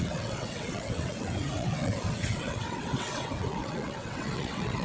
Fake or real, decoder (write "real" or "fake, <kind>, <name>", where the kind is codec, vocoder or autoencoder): fake, vocoder, WaveNeXt